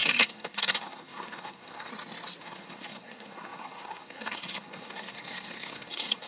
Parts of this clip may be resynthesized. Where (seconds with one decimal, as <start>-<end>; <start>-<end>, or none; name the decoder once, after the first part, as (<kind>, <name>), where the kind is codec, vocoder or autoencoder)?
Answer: 0.0-1.9 (codec, SNAC); 2.4-6.3